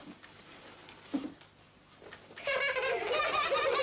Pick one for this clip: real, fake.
real